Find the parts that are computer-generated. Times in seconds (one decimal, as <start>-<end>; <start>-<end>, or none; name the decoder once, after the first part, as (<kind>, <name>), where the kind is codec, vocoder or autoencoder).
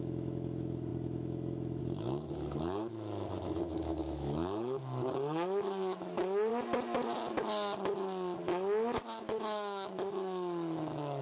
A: 0.0-6.5 (autoencoder, DAC-VAE); 9.2-11.2